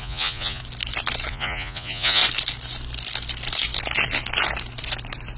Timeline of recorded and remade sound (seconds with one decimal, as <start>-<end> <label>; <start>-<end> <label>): 0.0-0.6 remade; 0.6-1.3 recorded; 1.3-2.2 remade; 2.2-5.4 recorded